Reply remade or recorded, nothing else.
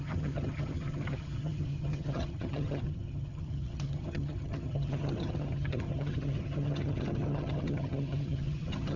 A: remade